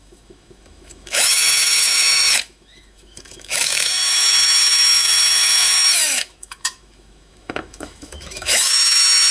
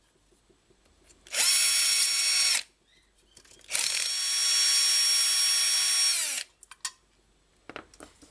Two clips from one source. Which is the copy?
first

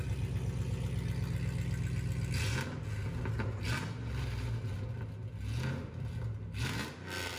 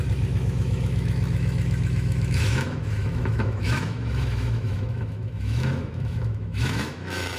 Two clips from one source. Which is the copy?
second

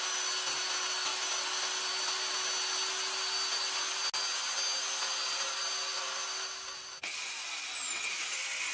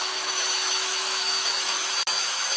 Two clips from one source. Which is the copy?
second